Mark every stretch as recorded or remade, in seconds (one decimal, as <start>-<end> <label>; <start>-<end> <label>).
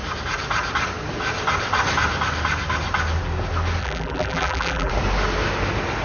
0.0-3.8 recorded; 3.8-4.9 remade; 4.9-6.0 recorded